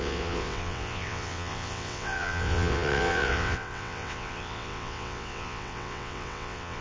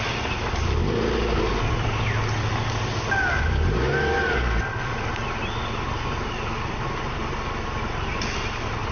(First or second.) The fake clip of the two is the first